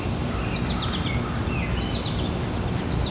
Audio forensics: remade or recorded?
recorded